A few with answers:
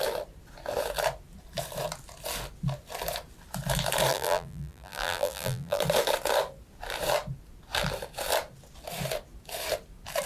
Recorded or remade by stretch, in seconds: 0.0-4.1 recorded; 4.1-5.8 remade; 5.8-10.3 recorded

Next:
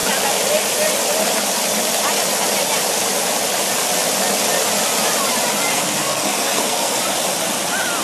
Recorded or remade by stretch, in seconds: 0.0-5.7 recorded; 5.7-7.0 remade; 7.0-8.0 recorded

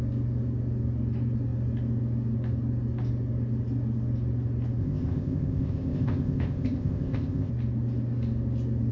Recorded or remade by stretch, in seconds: 0.0-4.8 recorded; 4.8-7.5 remade; 7.5-8.9 recorded

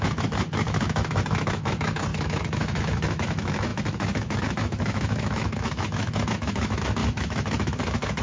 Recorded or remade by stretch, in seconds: 0.0-8.2 remade